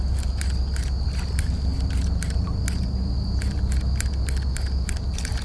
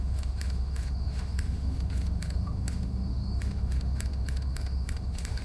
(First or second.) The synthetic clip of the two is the second